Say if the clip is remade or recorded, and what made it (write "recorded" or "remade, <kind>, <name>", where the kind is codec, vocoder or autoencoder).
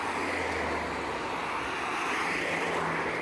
recorded